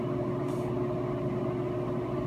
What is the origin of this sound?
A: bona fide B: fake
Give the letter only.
A